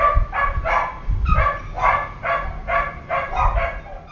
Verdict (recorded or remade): recorded